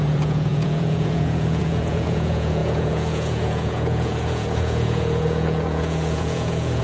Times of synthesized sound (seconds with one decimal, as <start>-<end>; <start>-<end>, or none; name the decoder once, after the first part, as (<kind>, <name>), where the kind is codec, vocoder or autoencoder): 0.0-6.8 (vocoder, Vocos)